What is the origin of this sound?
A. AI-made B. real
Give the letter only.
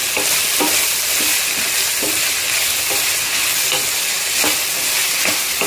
B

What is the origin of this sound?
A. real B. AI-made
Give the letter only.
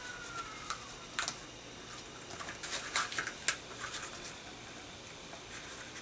A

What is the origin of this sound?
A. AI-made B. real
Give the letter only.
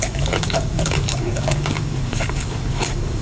A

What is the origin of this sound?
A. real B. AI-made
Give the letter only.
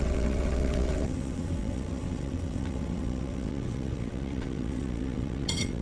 B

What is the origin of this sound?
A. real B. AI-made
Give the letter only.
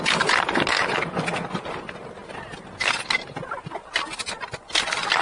A